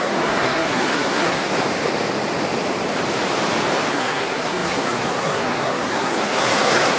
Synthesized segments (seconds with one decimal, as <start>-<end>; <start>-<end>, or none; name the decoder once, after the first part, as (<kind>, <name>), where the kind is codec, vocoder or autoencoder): 0.0-1.5 (codec, SNAC); 3.9-7.0

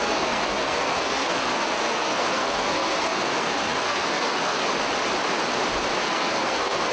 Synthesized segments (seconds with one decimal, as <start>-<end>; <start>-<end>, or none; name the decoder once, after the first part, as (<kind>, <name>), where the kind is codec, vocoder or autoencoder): 0.0-4.6 (codec, SNAC); 6.0-6.9

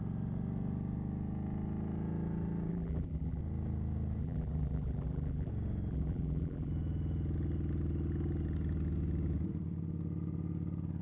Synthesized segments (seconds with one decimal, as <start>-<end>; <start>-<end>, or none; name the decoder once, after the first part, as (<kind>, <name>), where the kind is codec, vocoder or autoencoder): 2.7-3.4 (vocoder, BigVGAN v2); 4.2-5.5; 5.9-6.7

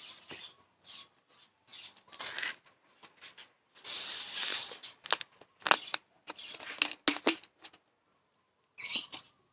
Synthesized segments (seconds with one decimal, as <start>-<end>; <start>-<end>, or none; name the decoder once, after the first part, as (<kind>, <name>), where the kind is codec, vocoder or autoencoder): none

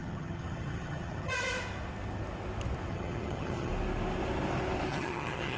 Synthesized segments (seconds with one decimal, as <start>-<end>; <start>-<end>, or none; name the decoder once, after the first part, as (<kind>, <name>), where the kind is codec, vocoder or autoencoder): 0.0-1.3 (vocoder, HiFi-GAN); 2.9-3.7; 4.9-5.6